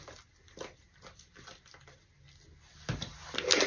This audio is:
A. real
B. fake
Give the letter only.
A